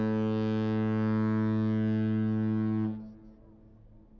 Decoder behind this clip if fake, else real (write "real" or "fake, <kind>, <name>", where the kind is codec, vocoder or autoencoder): real